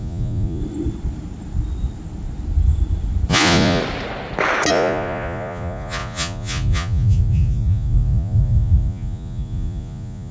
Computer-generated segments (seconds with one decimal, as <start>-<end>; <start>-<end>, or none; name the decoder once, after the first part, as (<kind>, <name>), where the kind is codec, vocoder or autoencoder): 0.0-0.6 (vocoder, Vocos); 3.3-3.8; 4.7-10.3